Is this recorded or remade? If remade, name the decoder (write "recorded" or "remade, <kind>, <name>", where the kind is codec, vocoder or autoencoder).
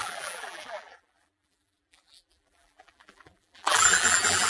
remade, vocoder, BigVGAN v2